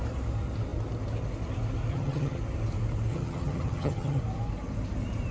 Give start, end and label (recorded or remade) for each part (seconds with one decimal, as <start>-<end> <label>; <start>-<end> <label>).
0.0-1.9 recorded; 1.9-2.4 remade; 2.4-3.1 recorded; 3.1-4.2 remade; 4.2-5.3 recorded